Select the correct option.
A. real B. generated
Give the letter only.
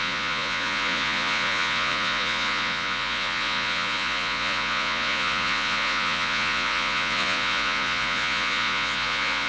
B